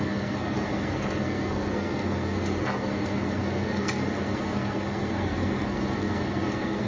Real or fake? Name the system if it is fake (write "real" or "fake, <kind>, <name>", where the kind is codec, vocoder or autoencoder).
fake, codec, SNAC